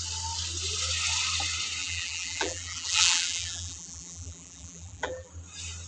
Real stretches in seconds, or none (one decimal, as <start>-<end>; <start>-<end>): 0.0-1.8; 5.3-5.9